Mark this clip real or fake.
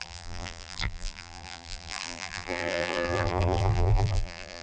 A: fake